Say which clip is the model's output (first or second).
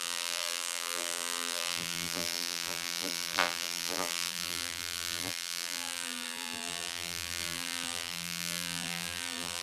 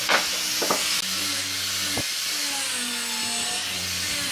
first